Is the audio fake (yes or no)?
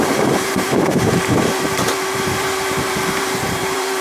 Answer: yes